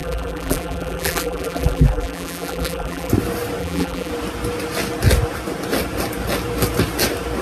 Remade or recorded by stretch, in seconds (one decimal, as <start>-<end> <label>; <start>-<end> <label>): 0.0-3.1 remade; 3.1-3.6 recorded; 3.6-4.1 remade; 4.1-7.4 recorded